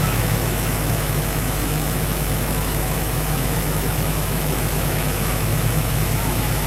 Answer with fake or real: fake